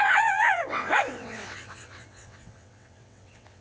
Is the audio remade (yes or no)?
yes